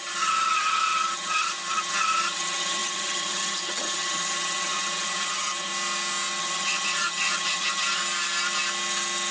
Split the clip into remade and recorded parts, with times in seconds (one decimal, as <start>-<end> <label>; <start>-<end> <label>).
0.0-5.7 remade; 5.7-6.4 recorded; 6.4-8.0 remade; 8.0-9.3 recorded